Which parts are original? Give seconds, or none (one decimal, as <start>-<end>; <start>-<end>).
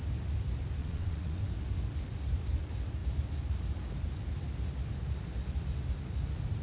0.0-0.8; 1.4-6.6